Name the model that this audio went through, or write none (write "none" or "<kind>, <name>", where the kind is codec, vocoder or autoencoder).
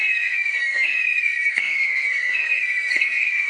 codec, SNAC